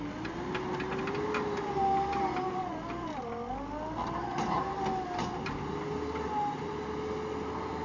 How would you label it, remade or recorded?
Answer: recorded